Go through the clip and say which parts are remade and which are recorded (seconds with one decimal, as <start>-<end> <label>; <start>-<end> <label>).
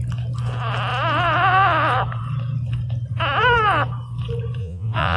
0.0-4.6 recorded; 4.6-5.2 remade